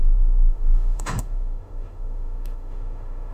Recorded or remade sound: remade